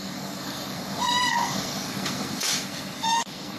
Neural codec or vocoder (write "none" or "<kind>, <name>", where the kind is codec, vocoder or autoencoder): codec, SNAC